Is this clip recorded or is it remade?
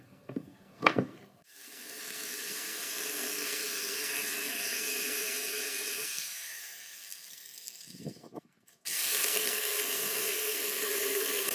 remade